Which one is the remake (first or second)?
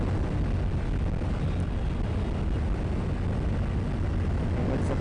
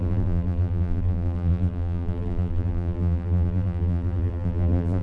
second